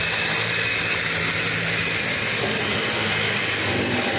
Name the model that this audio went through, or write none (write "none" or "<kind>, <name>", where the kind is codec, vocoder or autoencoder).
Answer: none